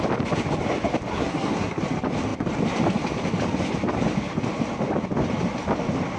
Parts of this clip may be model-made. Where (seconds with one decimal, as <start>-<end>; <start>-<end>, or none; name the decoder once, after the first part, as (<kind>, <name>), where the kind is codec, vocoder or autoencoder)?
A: 1.1-1.8 (codec, SNAC)